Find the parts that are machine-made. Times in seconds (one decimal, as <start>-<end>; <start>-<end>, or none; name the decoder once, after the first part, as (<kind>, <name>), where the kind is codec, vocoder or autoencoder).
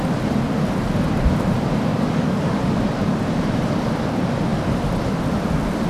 1.9-2.6 (codec, DAC)